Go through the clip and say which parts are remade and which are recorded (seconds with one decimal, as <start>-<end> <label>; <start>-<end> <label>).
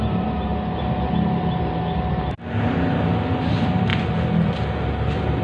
0.0-0.5 remade; 0.5-3.5 recorded; 3.5-5.4 remade